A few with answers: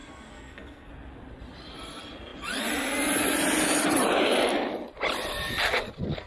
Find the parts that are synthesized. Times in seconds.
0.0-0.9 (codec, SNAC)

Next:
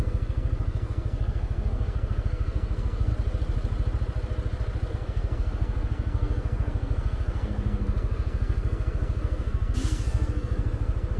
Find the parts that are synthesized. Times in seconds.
0.0-3.1 (codec, SNAC); 4.9-11.2

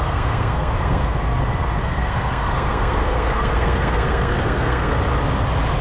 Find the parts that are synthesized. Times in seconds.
0.0-1.2 (codec, SNAC); 1.8-4.9